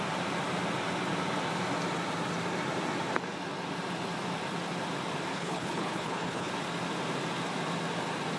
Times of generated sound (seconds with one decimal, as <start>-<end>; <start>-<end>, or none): 5.3-6.5